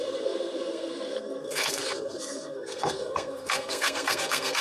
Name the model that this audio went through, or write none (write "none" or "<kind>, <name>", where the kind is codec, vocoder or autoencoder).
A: codec, SNAC